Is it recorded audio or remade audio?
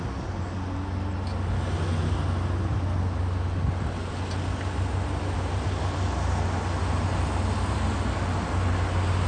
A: recorded